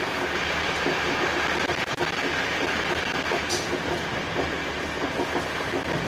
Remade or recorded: recorded